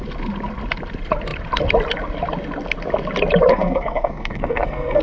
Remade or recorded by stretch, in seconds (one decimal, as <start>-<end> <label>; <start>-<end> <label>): 0.0-3.5 recorded; 3.5-5.0 remade